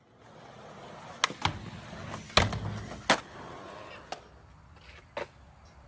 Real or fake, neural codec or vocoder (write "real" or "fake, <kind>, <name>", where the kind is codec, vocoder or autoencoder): real